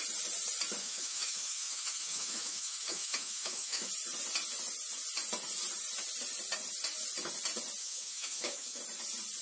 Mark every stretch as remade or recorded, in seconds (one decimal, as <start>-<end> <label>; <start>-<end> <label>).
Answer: 0.0-0.8 recorded; 0.8-3.9 remade; 3.9-7.8 recorded; 7.8-8.8 remade; 8.8-9.4 recorded